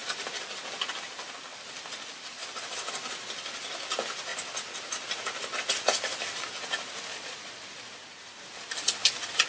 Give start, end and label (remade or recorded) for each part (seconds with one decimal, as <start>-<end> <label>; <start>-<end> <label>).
0.0-7.1 recorded; 7.1-7.6 remade; 7.6-9.5 recorded